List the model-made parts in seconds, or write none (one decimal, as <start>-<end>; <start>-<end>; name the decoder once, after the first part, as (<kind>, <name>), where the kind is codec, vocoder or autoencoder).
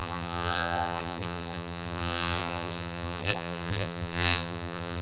0.0-5.0 (vocoder, BigVGAN v2)